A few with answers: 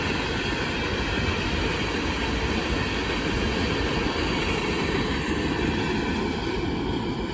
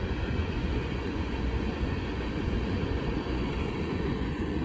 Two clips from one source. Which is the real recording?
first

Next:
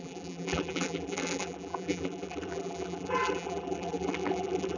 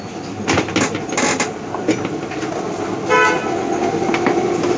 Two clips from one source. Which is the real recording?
second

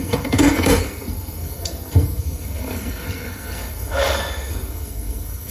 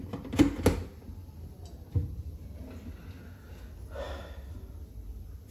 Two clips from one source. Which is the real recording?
second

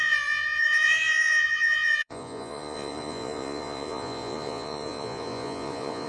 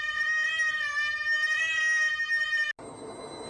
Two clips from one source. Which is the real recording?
second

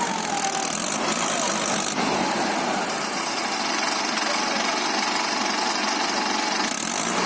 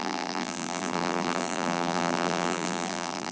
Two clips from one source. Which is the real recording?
first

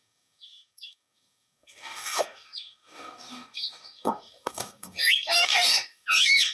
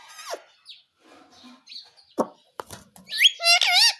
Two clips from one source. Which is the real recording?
second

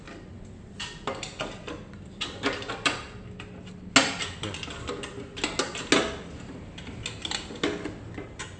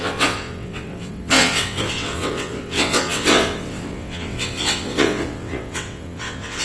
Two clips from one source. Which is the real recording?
first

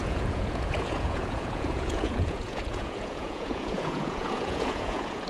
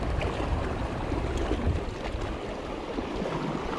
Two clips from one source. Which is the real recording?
second